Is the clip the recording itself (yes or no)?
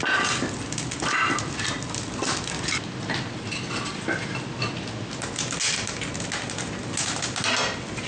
yes